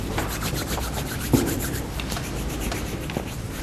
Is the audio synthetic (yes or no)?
no